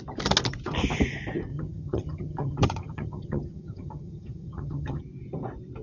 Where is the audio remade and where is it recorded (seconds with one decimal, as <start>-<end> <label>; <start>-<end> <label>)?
0.0-1.5 recorded; 1.5-5.0 remade; 5.0-5.8 recorded